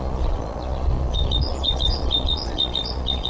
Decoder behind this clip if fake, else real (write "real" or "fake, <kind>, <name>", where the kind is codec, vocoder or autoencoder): fake, vocoder, Vocos